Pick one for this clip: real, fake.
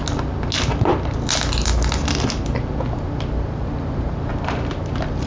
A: real